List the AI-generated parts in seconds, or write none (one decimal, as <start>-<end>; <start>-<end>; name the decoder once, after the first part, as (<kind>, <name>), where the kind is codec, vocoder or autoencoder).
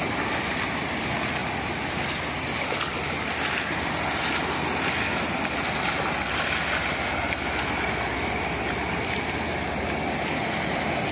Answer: none